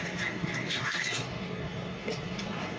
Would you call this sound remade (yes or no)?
yes